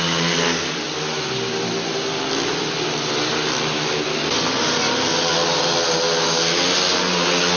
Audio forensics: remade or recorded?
recorded